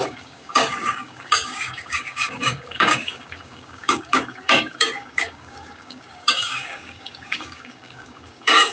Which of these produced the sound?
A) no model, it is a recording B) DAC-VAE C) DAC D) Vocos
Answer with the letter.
C